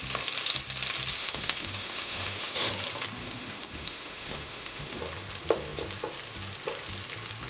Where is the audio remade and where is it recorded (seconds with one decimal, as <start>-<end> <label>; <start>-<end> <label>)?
0.0-1.2 recorded; 1.2-2.7 remade; 2.7-3.2 recorded; 3.2-5.0 remade; 5.0-7.5 recorded